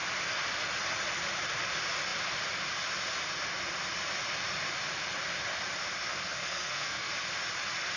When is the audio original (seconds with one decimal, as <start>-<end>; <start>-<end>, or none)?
0.0-6.1; 7.1-8.0